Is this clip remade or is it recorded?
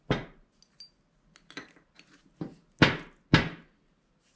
recorded